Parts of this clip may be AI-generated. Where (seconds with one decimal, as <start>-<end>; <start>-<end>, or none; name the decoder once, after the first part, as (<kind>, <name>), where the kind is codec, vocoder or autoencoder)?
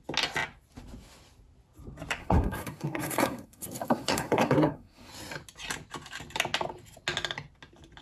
2.2-5.1 (codec, SNAC)